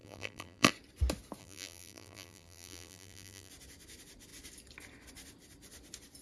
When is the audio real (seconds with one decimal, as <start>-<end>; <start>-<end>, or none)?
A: 0.7-1.4; 3.5-6.2